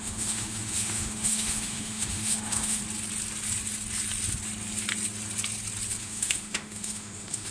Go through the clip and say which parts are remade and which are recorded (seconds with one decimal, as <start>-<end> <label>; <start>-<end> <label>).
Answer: 0.0-2.8 remade; 2.8-6.0 recorded; 6.0-7.5 remade